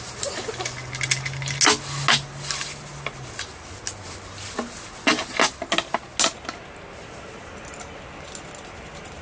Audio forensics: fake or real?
real